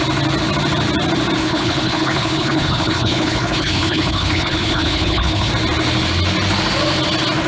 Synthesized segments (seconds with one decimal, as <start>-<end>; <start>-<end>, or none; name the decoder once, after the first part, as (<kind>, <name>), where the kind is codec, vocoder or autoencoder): 1.4-5.5 (codec, HILCodec)